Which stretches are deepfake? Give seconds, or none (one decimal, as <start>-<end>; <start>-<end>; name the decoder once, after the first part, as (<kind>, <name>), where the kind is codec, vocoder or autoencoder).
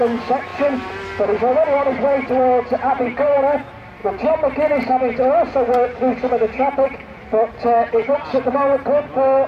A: 0.0-4.0 (vocoder, BigVGAN v2); 8.1-9.5